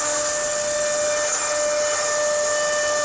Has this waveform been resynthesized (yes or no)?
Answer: no